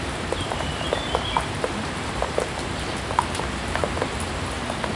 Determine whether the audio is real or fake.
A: fake